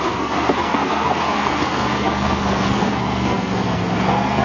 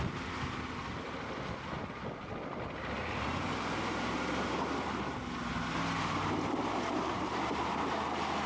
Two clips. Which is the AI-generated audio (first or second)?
first